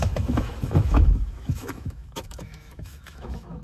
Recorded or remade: remade